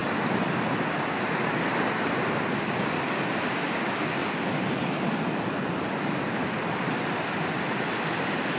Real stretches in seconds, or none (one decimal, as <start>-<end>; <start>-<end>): 0.0-8.6